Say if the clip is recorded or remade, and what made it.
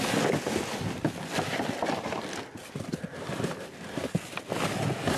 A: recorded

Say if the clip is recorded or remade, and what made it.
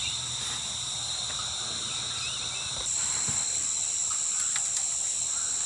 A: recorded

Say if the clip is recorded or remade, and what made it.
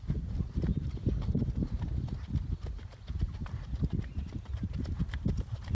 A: recorded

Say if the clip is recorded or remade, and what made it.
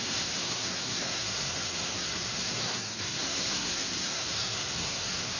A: remade, codec, SNAC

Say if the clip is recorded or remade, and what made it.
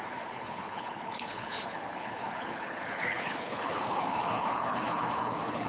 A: remade, codec, HILCodec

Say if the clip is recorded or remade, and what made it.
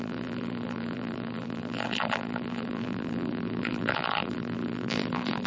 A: remade, vocoder, BigVGAN v2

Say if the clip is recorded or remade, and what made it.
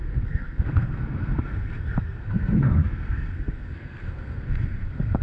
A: remade, codec, SNAC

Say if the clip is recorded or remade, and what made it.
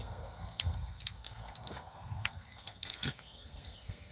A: remade, codec, SNAC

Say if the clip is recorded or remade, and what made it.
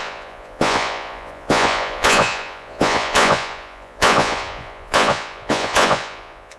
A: remade, vocoder, Vocos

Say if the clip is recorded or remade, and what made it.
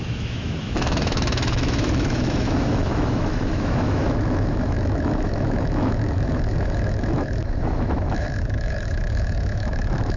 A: remade, autoencoder, DAC-VAE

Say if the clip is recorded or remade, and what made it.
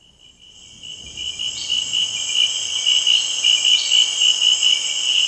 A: recorded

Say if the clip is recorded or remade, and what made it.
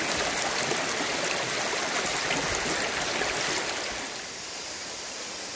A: recorded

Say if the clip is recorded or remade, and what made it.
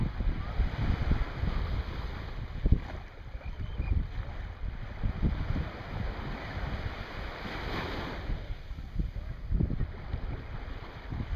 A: recorded